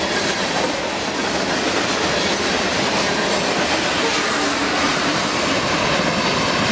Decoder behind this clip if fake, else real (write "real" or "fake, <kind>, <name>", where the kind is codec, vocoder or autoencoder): real